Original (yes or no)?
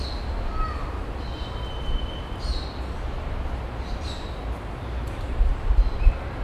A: yes